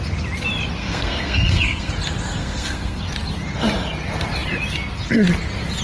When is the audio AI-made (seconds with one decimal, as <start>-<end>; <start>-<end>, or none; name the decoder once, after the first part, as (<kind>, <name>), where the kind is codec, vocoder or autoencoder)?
0.8-1.9 (codec, SNAC); 2.4-3.0